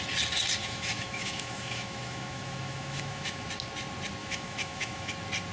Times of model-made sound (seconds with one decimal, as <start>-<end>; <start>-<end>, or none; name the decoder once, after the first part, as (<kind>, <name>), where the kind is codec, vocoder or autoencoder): 0.6-3.5 (autoencoder, DAC-VAE); 4.2-5.1